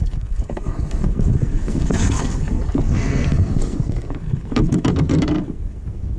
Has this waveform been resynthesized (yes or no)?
yes